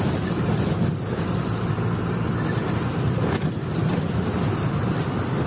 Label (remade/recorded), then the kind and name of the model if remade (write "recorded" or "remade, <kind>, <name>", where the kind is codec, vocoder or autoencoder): recorded